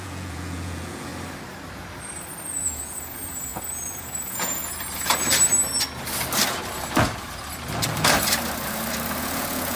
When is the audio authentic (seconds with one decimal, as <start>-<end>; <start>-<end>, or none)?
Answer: 1.1-2.6; 4.6-9.2